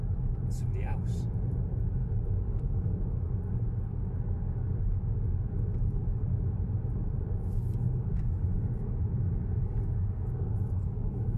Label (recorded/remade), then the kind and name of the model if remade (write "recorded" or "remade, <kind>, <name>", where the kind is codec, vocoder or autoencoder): recorded